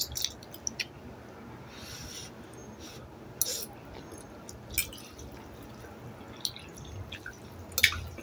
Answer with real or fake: real